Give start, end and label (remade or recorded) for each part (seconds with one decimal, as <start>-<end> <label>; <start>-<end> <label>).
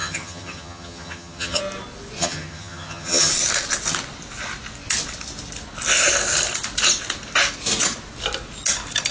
0.0-1.6 remade; 1.6-2.2 recorded; 2.2-3.3 remade; 3.3-9.1 recorded